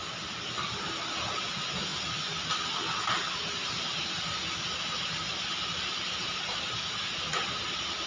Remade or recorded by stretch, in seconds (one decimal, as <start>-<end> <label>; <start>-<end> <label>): 0.0-8.1 recorded